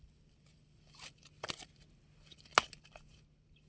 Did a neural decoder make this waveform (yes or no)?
no